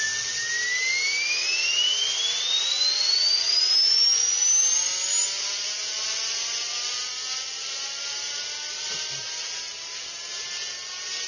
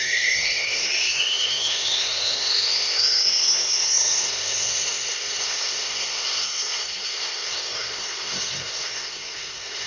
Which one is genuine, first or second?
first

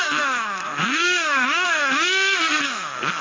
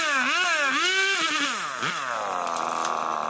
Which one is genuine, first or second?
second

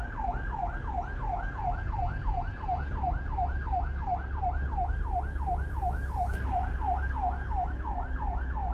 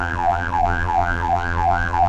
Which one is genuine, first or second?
first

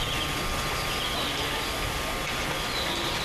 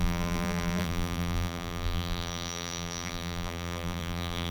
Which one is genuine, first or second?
first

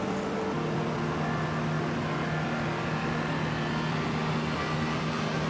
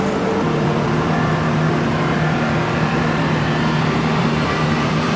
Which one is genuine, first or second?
first